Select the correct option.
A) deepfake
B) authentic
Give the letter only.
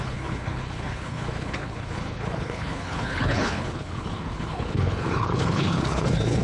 A